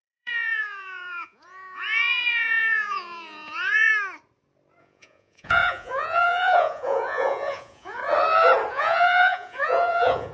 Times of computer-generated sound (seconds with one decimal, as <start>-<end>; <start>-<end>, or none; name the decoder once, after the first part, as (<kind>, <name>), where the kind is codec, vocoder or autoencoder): 0.0-3.9 (vocoder, Vocos); 4.8-8.0; 8.7-10.3